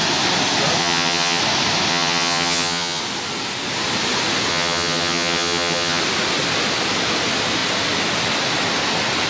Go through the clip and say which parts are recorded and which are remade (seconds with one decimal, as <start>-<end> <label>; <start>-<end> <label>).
0.0-0.8 recorded; 0.8-1.4 remade; 1.4-1.9 recorded; 1.9-3.0 remade; 3.0-4.5 recorded; 4.5-6.0 remade; 6.0-9.3 recorded